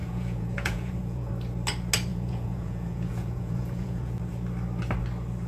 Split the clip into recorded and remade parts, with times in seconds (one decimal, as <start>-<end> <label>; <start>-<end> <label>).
0.0-1.3 remade; 1.3-2.1 recorded; 2.1-4.1 remade; 4.1-5.5 recorded